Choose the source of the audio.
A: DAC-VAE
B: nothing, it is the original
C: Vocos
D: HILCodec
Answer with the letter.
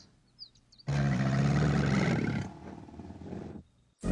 B